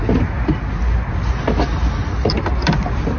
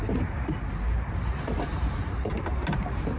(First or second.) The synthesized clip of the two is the second